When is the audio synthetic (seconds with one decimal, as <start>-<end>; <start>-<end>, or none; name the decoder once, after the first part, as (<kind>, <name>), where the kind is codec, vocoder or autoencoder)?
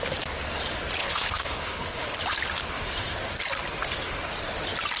1.0-2.2 (codec, HILCodec)